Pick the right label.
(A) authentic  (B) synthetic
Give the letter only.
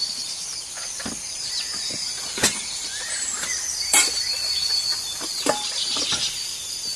B